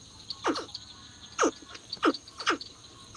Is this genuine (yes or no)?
yes